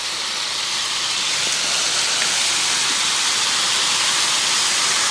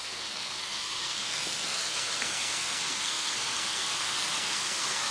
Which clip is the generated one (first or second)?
second